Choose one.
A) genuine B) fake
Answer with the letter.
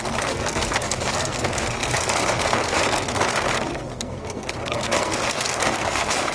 B